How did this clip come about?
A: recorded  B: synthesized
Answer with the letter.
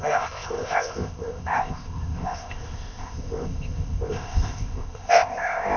B